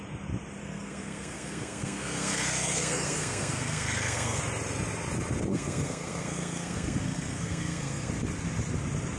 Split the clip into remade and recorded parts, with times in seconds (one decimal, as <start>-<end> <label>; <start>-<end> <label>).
0.0-0.6 recorded; 0.6-4.4 remade; 4.4-5.5 recorded; 5.5-8.1 remade; 8.1-9.2 recorded